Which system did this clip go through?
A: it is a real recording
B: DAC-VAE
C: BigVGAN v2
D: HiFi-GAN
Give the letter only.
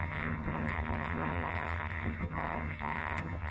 D